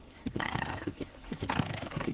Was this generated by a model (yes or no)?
yes